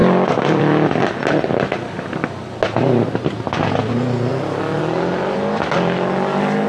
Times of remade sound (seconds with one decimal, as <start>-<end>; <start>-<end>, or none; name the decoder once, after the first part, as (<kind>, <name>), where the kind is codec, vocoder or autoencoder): none